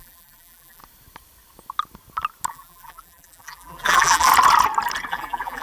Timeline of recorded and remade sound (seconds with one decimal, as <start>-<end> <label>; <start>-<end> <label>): 0.0-0.8 remade; 0.8-2.5 recorded; 2.5-4.3 remade; 4.3-5.1 recorded; 5.1-5.6 remade